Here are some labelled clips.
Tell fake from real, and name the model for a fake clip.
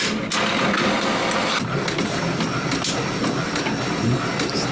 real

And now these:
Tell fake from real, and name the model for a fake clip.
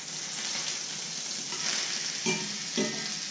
real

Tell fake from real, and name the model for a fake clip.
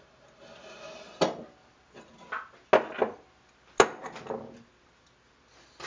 real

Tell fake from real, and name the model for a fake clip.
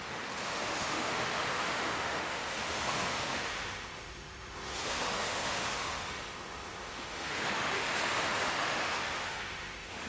fake, autoencoder, DAC-VAE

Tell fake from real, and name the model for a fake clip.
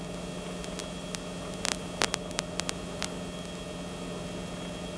real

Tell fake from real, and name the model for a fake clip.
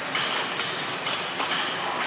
real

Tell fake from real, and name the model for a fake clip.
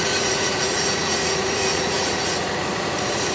fake, vocoder, Vocos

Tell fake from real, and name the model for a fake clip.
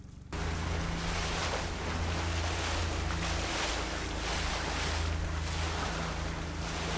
real